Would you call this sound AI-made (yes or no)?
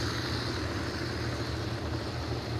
no